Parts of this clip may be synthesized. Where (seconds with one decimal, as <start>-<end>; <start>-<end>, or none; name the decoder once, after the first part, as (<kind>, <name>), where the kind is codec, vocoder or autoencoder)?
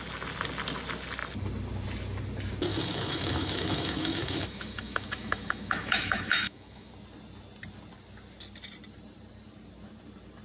2.7-6.9 (autoencoder, DAC-VAE)